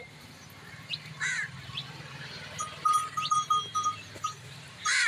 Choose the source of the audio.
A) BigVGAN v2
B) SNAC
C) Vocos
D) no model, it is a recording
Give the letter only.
A